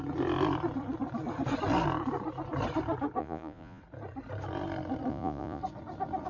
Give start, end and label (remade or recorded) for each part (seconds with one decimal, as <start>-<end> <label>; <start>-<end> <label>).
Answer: 0.0-3.2 recorded; 3.2-3.8 remade; 3.8-5.1 recorded; 5.1-5.6 remade; 5.6-6.3 recorded